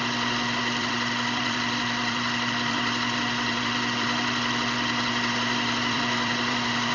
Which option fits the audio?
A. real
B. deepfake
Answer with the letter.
B